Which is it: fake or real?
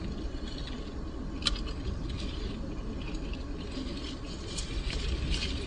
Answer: real